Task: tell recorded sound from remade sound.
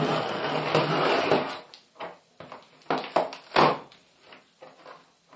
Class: recorded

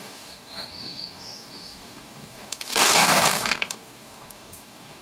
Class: remade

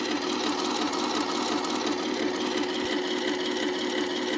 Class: recorded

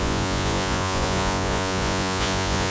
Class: remade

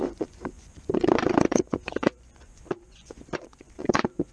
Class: remade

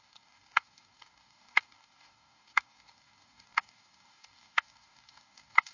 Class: remade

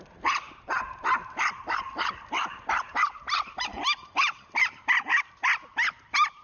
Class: recorded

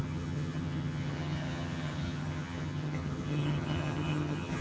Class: remade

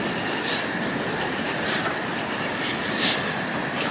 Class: recorded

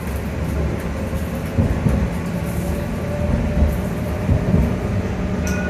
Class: recorded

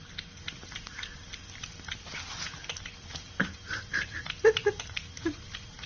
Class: recorded